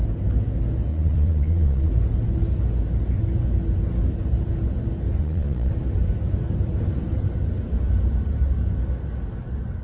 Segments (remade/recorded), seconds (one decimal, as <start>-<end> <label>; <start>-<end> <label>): 0.0-0.9 recorded; 0.9-1.9 remade; 1.9-5.2 recorded; 5.2-5.7 remade; 5.7-9.8 recorded